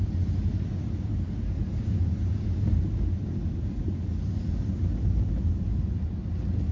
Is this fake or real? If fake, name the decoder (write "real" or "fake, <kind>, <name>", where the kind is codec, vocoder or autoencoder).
real